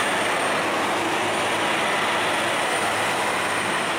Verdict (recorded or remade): recorded